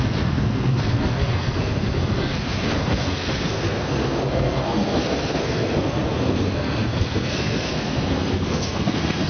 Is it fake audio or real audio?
fake